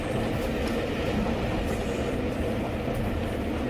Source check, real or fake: real